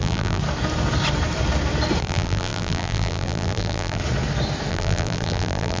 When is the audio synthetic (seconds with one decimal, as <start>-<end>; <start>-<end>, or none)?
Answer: 0.0-0.4; 2.0-4.0; 4.7-5.8